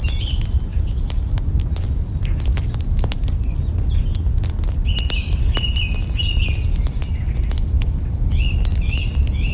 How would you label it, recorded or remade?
recorded